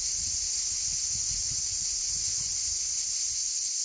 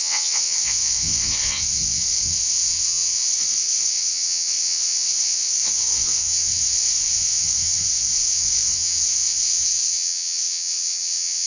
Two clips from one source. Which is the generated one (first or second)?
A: second